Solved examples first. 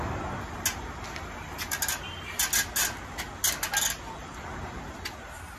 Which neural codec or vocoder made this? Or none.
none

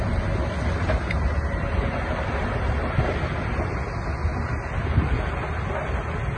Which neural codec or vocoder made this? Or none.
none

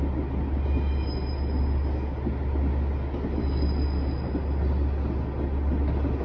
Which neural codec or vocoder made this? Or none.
none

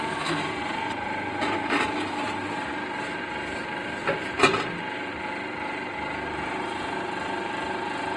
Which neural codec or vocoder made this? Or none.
vocoder, BigVGAN v2